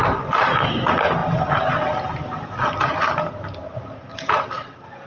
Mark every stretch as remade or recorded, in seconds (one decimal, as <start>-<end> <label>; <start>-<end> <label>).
0.0-5.1 recorded